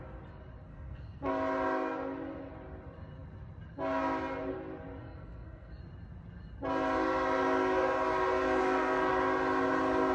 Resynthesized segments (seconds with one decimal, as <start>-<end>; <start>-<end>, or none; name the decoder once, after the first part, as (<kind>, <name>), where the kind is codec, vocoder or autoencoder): 0.7-1.3 (codec, SNAC); 5.0-5.8; 8.6-9.1